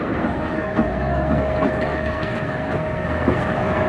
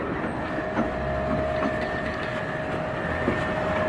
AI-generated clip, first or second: first